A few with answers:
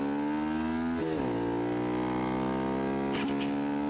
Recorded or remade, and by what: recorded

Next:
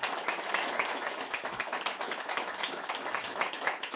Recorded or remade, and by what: remade, autoencoder, DAC-VAE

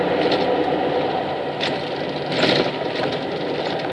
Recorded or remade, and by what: recorded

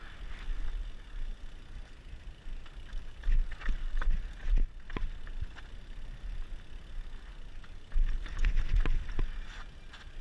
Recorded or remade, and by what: recorded